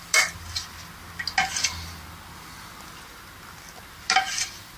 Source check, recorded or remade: recorded